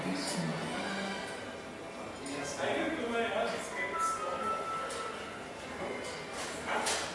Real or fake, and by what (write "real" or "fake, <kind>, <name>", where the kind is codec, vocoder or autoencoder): real